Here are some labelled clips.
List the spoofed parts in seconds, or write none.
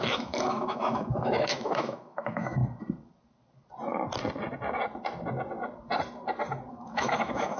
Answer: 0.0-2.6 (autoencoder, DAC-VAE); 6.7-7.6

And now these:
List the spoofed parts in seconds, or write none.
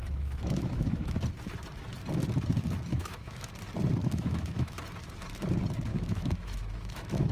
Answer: 0.0-1.2 (autoencoder, DAC-VAE); 2.9-3.5; 4.0-4.8; 5.9-7.3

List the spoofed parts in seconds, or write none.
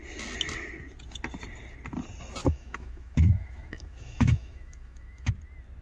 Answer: 2.4-5.3 (autoencoder, DAC-VAE)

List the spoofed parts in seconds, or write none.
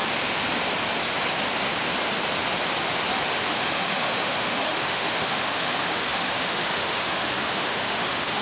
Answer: 3.4-8.4 (autoencoder, DAC-VAE)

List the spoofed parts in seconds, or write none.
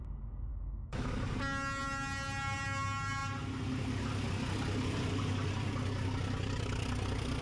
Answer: 0.5-1.1 (autoencoder, DAC-VAE)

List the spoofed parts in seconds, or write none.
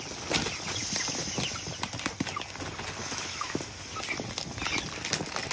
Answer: 3.0-3.6 (autoencoder, DAC-VAE)